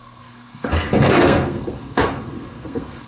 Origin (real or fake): fake